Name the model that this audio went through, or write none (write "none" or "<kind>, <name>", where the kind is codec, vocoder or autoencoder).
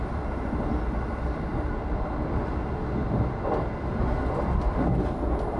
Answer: none